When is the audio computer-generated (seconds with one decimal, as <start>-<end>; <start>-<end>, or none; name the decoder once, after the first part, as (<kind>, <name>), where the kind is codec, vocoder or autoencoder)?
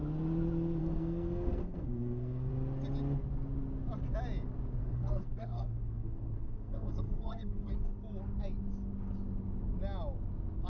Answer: 0.8-2.5 (codec, SNAC); 4.8-7.7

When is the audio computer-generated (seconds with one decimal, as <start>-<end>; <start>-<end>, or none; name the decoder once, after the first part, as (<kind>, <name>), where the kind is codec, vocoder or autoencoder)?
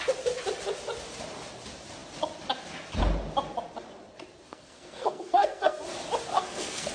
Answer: 4.5-5.8 (codec, SNAC); 6.3-6.9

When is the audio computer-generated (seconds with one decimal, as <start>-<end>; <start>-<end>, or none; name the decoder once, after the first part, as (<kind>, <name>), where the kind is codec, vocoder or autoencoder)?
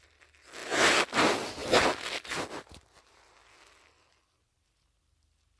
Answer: 0.6-1.2 (vocoder, BigVGAN v2)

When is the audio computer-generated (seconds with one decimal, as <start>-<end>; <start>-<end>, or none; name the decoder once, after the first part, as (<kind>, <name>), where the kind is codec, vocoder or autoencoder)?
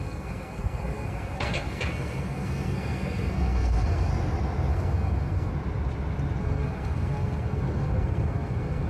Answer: 0.0-4.1 (codec, SNAC); 4.7-5.5; 6.4-8.9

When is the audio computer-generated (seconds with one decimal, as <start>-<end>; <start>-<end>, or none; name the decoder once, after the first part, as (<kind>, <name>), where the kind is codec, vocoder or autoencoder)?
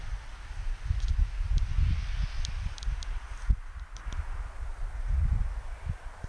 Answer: none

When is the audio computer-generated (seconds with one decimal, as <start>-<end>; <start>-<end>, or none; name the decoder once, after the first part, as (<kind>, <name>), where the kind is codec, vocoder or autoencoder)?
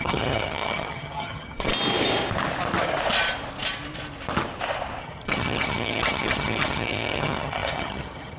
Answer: 0.0-1.7 (vocoder, HiFi-GAN); 5.0-8.4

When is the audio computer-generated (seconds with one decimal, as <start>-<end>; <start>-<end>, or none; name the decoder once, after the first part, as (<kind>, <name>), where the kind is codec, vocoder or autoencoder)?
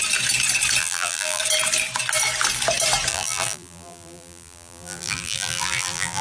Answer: 0.8-1.4 (vocoder, BigVGAN v2); 3.1-6.2